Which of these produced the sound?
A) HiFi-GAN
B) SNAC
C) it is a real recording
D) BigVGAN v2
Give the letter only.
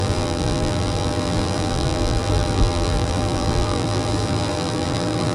D